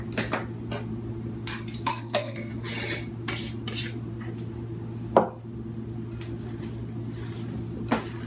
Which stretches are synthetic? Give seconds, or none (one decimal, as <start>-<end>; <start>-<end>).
1.9-2.5